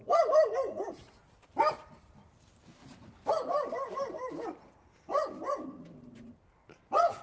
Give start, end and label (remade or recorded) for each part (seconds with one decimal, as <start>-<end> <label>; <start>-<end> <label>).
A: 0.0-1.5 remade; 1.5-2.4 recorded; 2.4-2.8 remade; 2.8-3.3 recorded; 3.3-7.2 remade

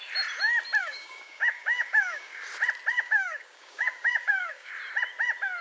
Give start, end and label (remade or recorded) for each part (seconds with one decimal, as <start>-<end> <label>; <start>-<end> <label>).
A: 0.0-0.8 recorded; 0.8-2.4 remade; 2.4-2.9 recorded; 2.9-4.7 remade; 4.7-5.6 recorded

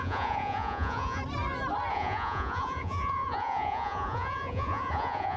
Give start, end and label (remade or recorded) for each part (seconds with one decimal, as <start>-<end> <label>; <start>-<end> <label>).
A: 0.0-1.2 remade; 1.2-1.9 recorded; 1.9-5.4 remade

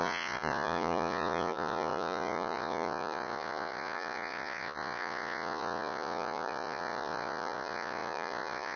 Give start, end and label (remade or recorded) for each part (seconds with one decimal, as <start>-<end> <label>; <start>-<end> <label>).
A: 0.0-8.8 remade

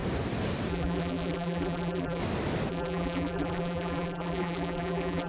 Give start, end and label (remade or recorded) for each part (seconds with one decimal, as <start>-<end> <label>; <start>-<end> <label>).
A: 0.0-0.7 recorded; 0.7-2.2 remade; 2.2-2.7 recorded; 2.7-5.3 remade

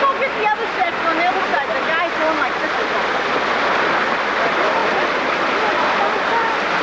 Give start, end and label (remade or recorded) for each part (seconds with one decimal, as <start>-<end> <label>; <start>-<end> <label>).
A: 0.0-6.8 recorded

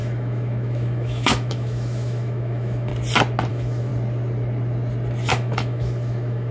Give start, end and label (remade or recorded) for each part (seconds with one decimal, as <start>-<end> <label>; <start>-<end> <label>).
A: 0.0-2.9 remade; 2.9-3.5 recorded; 3.5-3.9 remade; 3.9-5.3 recorded; 5.3-6.5 remade